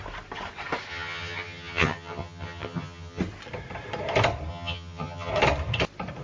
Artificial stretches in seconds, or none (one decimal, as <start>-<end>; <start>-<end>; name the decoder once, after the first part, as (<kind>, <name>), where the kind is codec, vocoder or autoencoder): 0.9-3.2 (vocoder, HiFi-GAN); 4.5-5.3